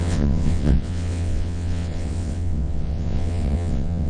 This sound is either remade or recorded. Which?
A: remade